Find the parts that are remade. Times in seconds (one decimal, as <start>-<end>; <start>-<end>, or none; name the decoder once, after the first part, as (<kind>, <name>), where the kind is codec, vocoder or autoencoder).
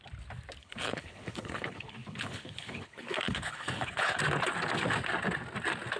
0.6-4.2 (codec, HILCodec)